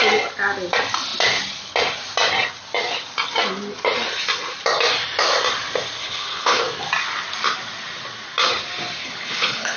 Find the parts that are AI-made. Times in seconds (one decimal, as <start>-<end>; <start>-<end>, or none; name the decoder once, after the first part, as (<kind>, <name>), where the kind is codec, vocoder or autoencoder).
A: 6.0-6.6 (codec, HILCodec); 9.0-9.8